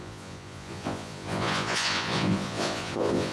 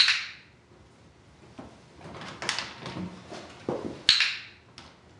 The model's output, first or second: first